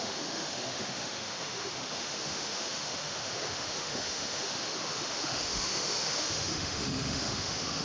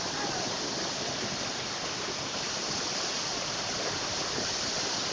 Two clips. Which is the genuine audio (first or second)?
second